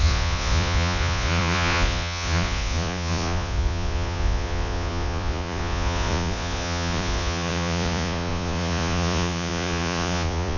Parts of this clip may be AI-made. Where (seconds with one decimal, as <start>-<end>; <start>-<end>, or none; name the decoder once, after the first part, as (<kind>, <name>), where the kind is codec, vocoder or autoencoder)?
0.0-10.6 (vocoder, Vocos)